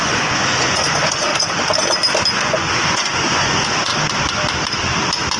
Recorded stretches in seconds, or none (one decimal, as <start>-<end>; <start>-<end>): 1.3-2.3; 3.9-5.4